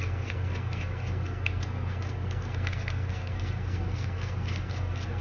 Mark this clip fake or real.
fake